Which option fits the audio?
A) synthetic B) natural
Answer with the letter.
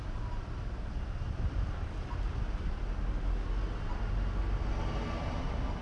B